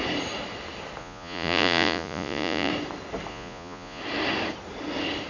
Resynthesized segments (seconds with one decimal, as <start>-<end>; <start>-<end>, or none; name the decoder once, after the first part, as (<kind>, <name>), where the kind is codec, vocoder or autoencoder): 1.0-2.7 (vocoder, Vocos); 3.3-4.0